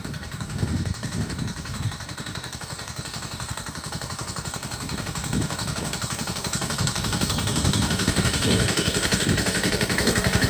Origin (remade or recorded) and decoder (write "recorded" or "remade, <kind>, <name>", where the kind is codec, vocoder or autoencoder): remade, codec, DAC